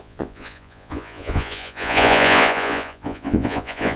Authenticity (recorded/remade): remade